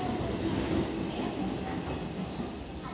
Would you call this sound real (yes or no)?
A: yes